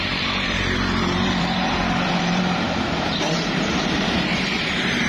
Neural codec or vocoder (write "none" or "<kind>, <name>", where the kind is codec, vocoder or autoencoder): vocoder, BigVGAN v2